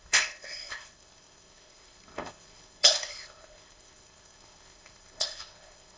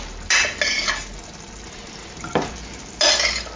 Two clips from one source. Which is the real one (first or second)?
second